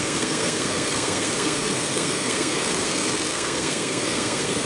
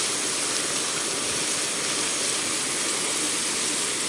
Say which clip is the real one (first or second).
second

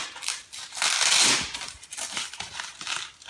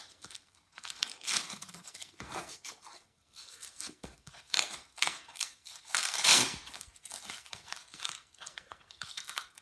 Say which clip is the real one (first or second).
first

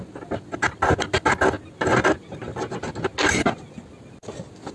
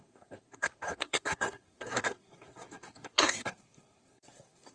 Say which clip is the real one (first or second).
first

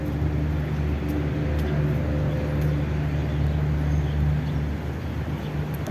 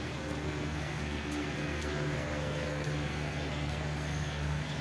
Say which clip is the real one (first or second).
first